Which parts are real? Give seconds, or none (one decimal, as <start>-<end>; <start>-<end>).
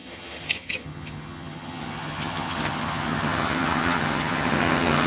none